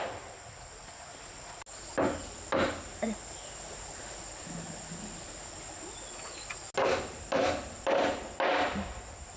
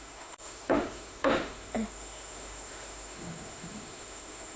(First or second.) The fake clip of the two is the second